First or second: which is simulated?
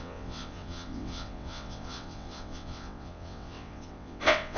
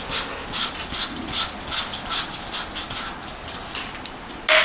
first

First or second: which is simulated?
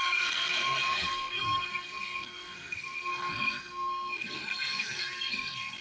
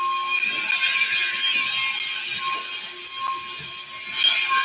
first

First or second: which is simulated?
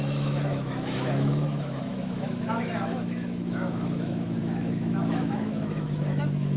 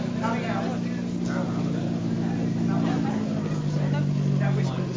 first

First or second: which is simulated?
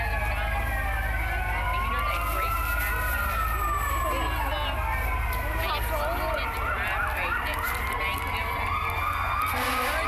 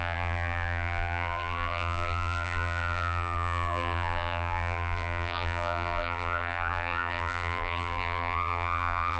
second